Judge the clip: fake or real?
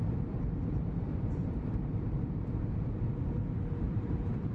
fake